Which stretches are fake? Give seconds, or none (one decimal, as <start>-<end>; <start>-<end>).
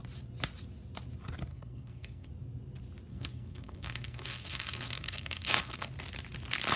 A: 1.5-2.3; 3.1-5.9